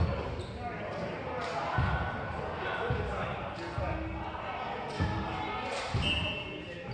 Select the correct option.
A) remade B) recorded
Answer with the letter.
B